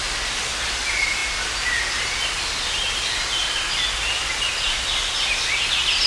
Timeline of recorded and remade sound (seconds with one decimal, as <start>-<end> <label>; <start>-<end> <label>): 0.0-6.1 recorded